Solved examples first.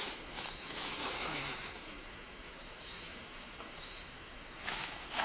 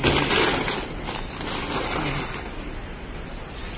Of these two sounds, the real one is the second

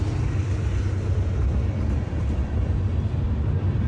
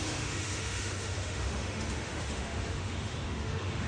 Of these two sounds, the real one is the first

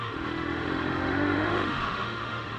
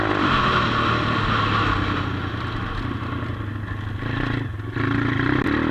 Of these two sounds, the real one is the second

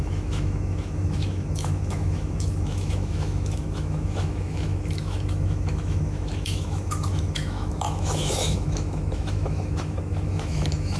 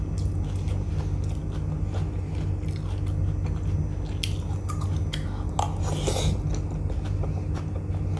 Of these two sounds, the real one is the second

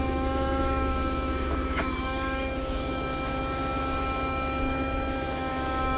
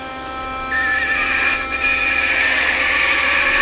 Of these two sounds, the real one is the second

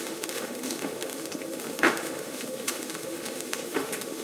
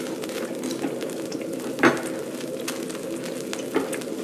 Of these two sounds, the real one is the second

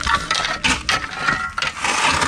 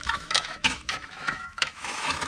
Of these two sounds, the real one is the first